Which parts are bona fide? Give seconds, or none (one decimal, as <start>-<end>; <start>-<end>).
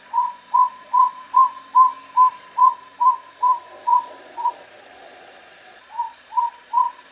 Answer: 1.4-2.3; 2.7-3.8